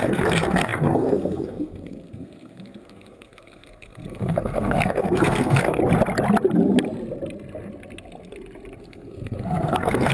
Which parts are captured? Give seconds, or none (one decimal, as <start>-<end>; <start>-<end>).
5.8-8.8